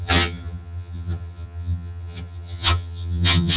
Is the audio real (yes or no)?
no